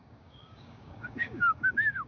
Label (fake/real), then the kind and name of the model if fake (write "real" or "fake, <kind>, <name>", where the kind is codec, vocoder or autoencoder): fake, codec, DAC